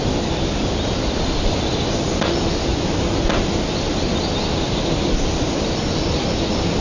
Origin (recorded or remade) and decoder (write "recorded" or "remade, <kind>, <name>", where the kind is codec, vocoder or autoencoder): recorded